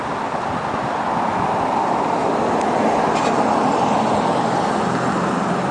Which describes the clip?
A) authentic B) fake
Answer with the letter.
A